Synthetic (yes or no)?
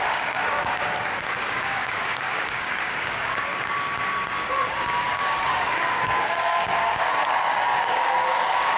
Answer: yes